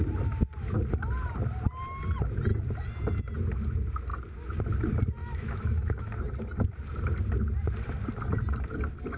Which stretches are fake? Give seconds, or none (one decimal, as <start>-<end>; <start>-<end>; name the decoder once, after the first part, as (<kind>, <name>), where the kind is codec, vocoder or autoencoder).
5.2-6.2 (autoencoder, DAC-VAE)